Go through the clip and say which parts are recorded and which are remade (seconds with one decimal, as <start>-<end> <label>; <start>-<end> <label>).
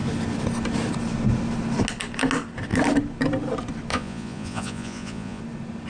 0.0-3.9 recorded; 3.9-5.4 remade; 5.4-5.9 recorded